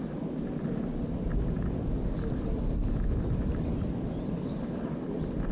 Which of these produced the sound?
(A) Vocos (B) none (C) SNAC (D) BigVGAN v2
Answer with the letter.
B